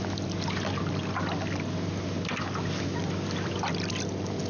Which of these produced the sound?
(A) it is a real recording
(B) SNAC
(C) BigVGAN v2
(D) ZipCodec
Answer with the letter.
A